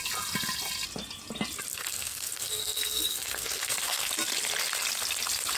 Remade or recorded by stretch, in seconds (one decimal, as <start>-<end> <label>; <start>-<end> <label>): 0.0-1.7 recorded; 1.7-4.1 remade; 4.1-5.6 recorded